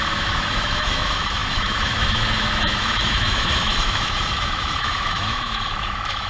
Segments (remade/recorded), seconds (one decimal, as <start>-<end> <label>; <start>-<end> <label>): 0.0-6.3 remade